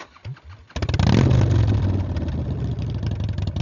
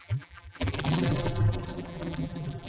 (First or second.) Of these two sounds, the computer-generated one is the second